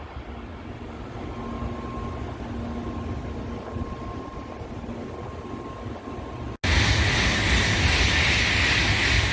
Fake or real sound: real